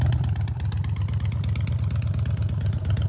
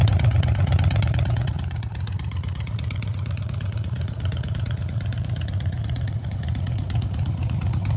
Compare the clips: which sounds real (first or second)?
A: first